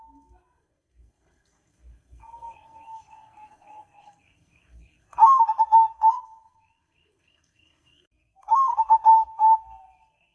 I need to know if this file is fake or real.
fake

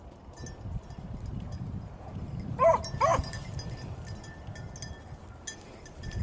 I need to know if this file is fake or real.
real